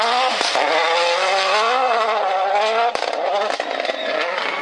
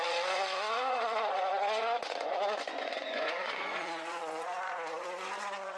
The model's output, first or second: second